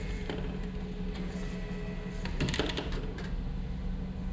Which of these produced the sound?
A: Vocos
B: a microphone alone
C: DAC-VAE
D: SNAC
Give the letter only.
B